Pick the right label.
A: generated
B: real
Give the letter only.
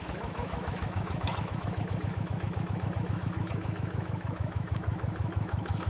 A